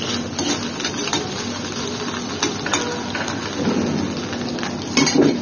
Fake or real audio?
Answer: real